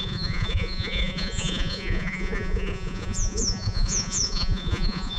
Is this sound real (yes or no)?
no